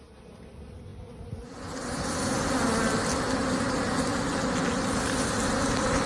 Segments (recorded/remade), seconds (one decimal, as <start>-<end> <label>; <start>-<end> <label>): 0.0-6.1 recorded